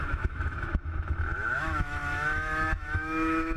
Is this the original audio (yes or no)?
no